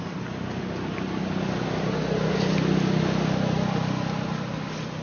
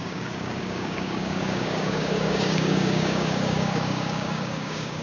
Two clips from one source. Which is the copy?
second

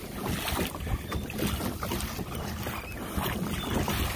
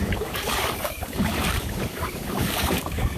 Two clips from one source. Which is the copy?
second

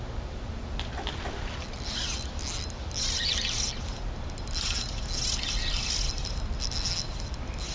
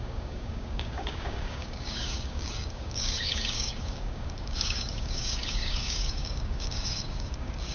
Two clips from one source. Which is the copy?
second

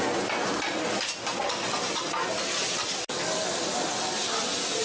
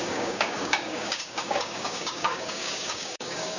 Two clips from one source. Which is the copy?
second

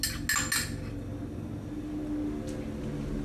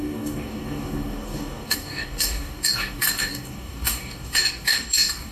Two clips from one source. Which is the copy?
second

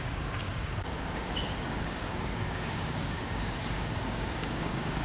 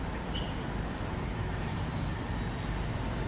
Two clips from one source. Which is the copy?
first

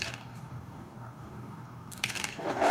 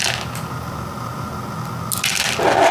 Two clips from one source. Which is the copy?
first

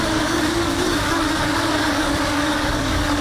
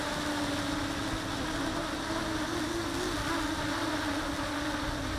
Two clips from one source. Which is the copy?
first